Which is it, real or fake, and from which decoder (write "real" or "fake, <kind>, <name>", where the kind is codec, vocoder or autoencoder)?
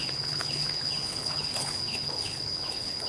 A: fake, codec, HILCodec